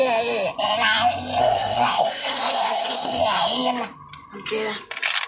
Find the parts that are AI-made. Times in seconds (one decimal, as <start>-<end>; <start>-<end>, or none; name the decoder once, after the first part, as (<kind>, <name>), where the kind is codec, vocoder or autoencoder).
1.4-3.2 (codec, SNAC)